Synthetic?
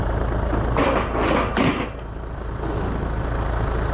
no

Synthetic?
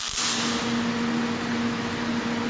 no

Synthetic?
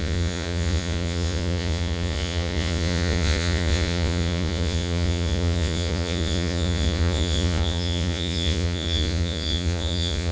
yes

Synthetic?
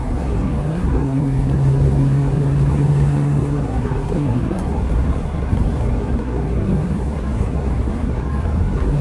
yes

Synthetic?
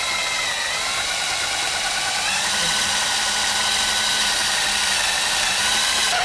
no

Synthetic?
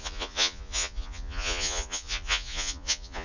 yes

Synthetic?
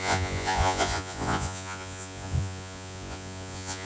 yes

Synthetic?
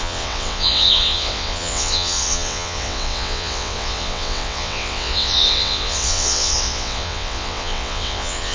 yes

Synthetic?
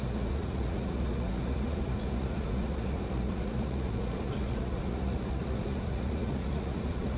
yes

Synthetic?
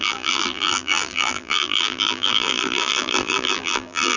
yes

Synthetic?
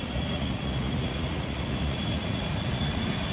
yes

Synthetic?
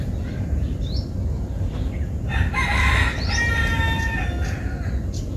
no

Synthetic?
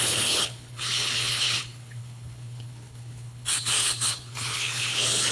yes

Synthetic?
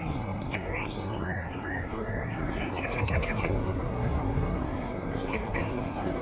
yes